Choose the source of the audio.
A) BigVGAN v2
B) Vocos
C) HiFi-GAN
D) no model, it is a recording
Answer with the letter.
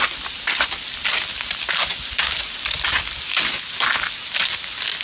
D